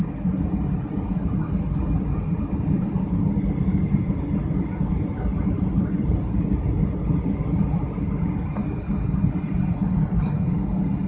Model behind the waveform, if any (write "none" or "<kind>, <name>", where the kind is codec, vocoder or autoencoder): none